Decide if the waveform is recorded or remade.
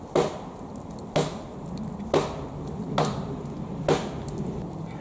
recorded